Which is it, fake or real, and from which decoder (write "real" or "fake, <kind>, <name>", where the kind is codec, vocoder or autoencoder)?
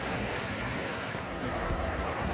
fake, codec, SNAC